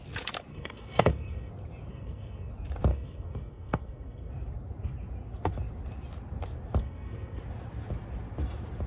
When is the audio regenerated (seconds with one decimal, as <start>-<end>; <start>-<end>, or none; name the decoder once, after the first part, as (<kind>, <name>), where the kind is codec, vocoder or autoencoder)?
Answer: 0.5-1.5 (codec, SNAC); 1.9-2.5; 2.9-4.3; 6.8-7.4